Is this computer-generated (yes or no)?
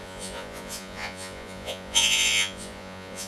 yes